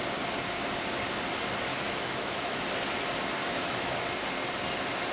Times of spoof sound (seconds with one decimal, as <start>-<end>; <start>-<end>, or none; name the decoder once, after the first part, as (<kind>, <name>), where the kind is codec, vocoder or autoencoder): 1.7-2.6 (autoencoder, DAC-VAE); 3.4-4.0